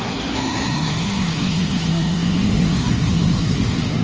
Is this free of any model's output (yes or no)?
no